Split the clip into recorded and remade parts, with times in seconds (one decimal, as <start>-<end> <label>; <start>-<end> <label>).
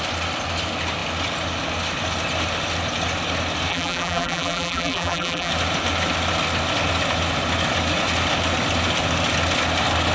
0.0-3.7 recorded; 3.7-5.5 remade; 5.5-10.1 recorded